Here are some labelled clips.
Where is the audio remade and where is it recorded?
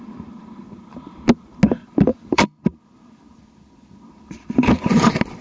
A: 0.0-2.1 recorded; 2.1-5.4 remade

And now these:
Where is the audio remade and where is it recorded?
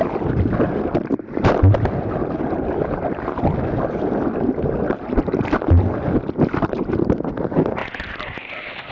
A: 0.0-8.9 recorded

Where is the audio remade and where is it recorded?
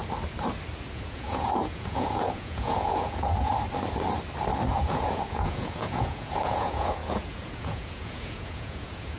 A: 0.0-0.9 recorded; 0.9-3.5 remade; 3.5-4.7 recorded; 4.7-9.2 remade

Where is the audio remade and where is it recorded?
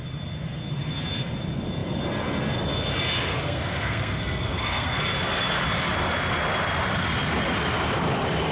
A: 0.0-3.3 recorded; 3.3-5.0 remade; 5.0-8.5 recorded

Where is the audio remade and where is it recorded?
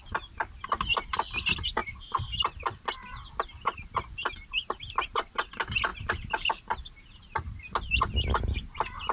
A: 0.0-9.1 recorded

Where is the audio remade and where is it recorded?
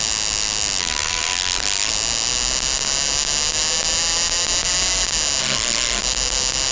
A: 0.0-0.8 recorded; 0.8-1.9 remade; 1.9-5.4 recorded; 5.4-6.0 remade; 6.0-6.7 recorded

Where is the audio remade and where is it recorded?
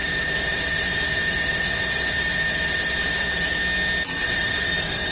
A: 0.0-3.6 remade; 3.6-4.2 recorded; 4.2-5.1 remade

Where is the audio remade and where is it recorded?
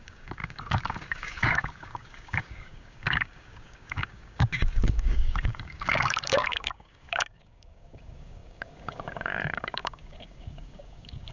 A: 0.0-11.3 remade